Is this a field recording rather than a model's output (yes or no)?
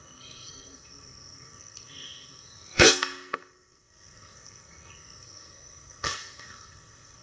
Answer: no